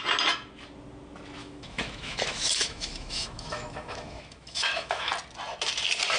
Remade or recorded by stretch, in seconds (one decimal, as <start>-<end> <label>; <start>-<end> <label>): 0.0-1.4 recorded; 1.4-5.1 remade; 5.1-6.2 recorded